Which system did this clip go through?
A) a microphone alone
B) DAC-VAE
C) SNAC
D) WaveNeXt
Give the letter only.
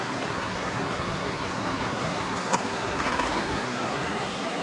C